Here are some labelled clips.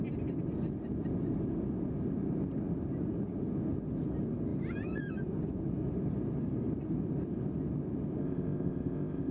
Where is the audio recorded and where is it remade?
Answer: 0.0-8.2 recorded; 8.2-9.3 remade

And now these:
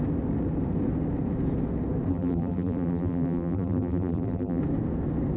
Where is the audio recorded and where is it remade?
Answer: 0.0-2.1 recorded; 2.1-4.6 remade; 4.6-5.4 recorded

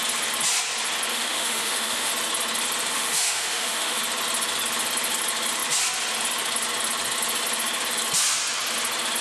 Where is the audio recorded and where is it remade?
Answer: 0.0-1.1 recorded; 1.1-2.1 remade; 2.1-2.9 recorded; 2.9-4.0 remade; 4.0-9.2 recorded

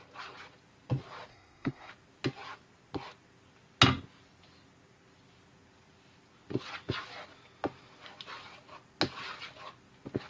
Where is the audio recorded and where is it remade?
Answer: 0.0-1.3 recorded; 1.3-1.9 remade; 1.9-10.3 recorded

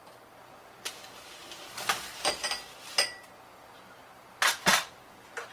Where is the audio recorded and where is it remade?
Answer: 0.0-5.5 recorded

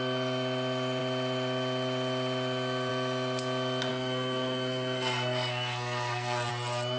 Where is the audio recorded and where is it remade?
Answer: 0.0-3.9 recorded; 3.9-6.5 remade; 6.5-7.0 recorded